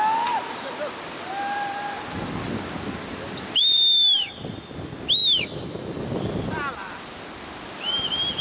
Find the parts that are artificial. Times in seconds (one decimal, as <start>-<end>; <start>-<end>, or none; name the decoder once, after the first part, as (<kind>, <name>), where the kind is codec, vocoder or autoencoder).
3.6-4.5 (vocoder, BigVGAN v2)